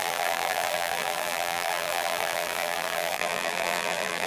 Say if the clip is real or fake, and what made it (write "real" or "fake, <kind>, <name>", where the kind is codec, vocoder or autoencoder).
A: fake, vocoder, BigVGAN v2